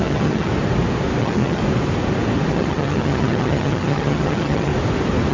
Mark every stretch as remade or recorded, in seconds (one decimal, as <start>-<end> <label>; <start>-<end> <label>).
0.0-0.5 remade; 0.5-1.2 recorded; 1.2-1.6 remade; 1.6-2.5 recorded; 2.5-4.7 remade; 4.7-5.3 recorded